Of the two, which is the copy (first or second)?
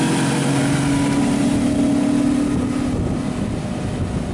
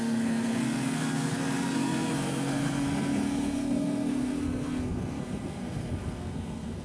second